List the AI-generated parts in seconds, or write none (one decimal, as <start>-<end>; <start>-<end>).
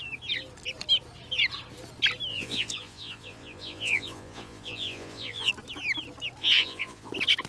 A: 2.3-5.5; 6.4-7.1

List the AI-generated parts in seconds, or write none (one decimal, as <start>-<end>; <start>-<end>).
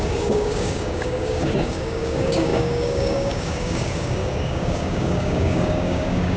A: 0.0-6.4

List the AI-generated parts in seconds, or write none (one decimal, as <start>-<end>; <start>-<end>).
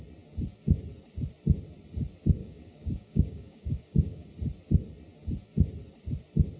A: 2.4-4.3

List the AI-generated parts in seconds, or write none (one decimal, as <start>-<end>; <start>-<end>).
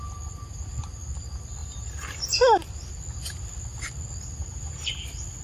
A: 1.6-2.9; 4.4-4.9